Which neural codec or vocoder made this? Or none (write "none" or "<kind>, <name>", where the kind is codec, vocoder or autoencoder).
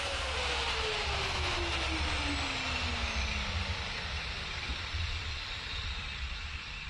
none